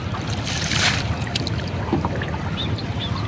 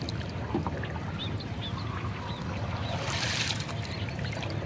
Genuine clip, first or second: second